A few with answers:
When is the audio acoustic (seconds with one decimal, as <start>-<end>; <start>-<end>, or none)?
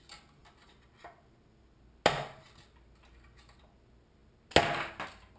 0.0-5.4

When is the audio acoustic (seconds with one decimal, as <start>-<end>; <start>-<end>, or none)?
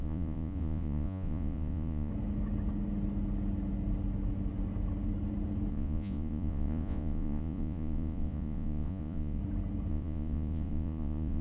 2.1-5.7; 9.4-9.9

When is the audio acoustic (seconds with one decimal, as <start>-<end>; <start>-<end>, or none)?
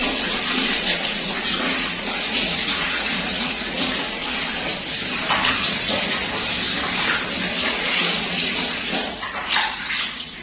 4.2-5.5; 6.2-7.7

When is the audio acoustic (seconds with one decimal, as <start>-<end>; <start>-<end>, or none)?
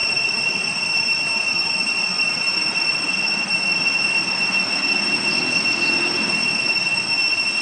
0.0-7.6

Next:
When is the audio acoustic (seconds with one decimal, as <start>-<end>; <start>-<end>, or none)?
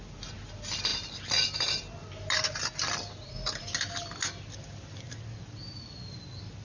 0.0-6.6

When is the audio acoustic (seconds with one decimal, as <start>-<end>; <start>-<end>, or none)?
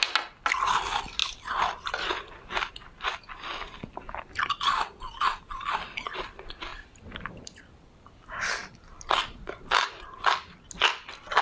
0.0-11.4